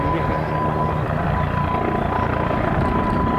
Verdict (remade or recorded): recorded